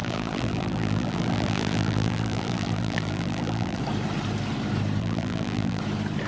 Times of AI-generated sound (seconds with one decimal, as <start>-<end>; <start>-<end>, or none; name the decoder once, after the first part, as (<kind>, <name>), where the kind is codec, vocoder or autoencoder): 0.0-3.8 (vocoder, BigVGAN v2); 5.0-5.8